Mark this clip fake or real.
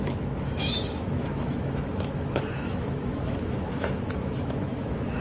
fake